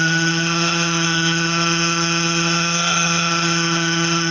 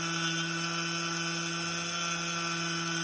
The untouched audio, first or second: second